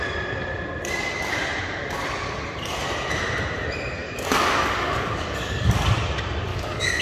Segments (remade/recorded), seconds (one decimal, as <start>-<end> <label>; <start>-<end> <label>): 0.0-4.0 recorded; 4.0-5.9 remade; 5.9-6.5 recorded; 6.5-7.0 remade